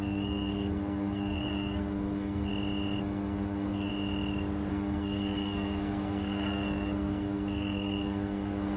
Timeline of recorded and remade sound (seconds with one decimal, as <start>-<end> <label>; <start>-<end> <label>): 0.0-2.5 remade; 2.5-3.0 recorded; 3.0-3.9 remade; 3.9-4.7 recorded; 4.7-8.8 remade